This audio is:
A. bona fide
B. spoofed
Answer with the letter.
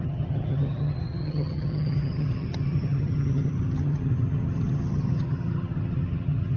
B